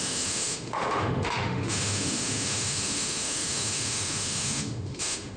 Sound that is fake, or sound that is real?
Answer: fake